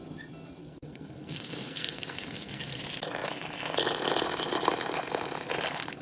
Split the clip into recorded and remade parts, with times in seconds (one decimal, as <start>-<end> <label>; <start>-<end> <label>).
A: 0.0-0.6 recorded; 0.6-2.8 remade; 2.8-6.0 recorded